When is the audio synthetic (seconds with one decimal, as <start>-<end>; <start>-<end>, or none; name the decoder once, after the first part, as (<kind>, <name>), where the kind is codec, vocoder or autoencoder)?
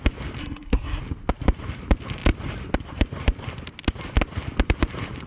0.4-1.0 (codec, SNAC)